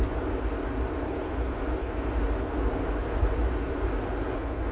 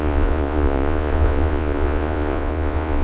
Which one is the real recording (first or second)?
first